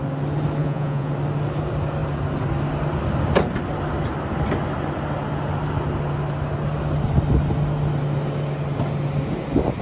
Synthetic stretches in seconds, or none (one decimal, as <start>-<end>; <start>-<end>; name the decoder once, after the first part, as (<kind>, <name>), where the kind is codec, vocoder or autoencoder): 0.6-1.1 (vocoder, Vocos)